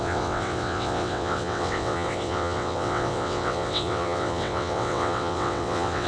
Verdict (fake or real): fake